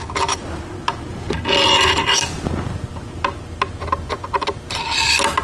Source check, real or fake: real